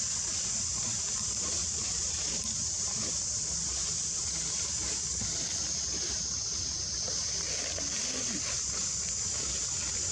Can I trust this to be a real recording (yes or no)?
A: yes